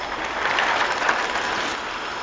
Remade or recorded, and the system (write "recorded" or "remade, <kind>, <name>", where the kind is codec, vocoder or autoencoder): recorded